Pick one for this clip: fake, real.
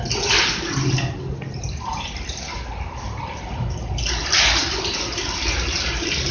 real